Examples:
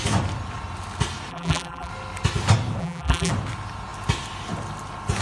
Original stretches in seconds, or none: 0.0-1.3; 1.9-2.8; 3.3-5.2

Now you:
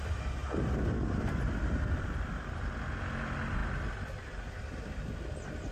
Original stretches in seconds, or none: 0.0-0.4; 2.6-5.7

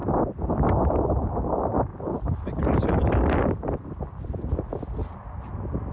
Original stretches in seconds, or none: 0.7-1.9; 5.4-5.9

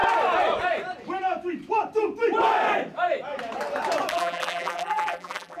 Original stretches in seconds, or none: 0.0-4.1

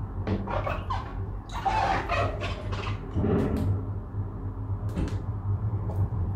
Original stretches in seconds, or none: 0.0-0.7; 1.1-4.9

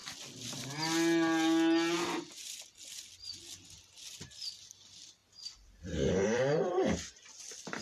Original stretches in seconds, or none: 0.0-3.9

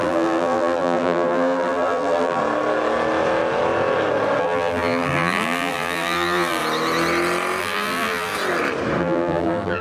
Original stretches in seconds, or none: 2.4-4.4; 6.6-7.6; 8.3-9.0

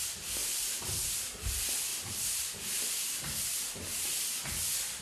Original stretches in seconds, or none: 0.0-0.4; 1.1-1.9; 4.2-5.0